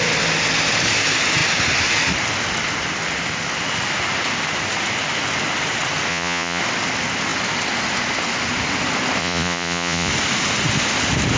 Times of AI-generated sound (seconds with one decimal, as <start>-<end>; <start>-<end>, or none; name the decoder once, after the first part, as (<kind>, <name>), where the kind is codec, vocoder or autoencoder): 6.1-6.6 (vocoder, Vocos); 9.2-10.1